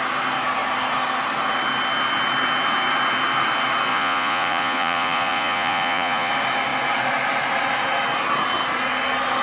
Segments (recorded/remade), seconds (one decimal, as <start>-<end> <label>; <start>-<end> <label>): 0.0-3.9 recorded; 3.9-6.3 remade; 6.3-9.4 recorded